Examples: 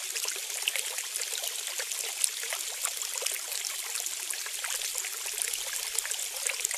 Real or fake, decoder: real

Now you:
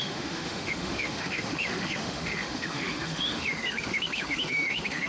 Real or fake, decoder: fake, autoencoder, DAC-VAE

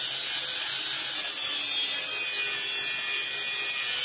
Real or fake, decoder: real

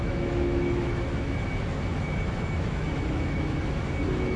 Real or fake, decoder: fake, autoencoder, DAC-VAE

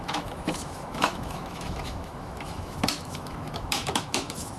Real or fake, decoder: fake, autoencoder, DAC-VAE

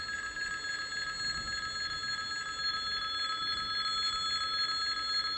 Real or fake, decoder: real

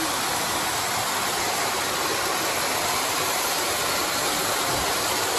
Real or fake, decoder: real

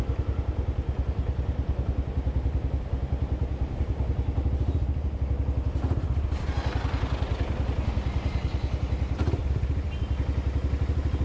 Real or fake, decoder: real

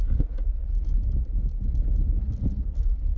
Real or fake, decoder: real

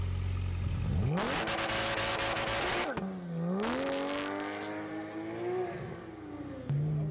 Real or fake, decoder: real